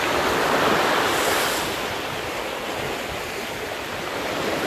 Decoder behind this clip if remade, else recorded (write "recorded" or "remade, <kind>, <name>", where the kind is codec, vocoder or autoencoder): recorded